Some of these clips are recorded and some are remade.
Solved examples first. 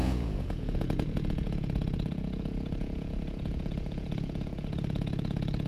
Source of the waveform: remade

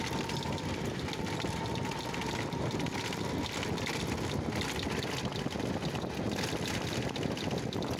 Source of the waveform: recorded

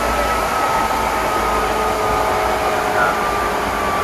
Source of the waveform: recorded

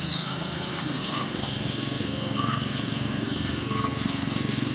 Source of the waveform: remade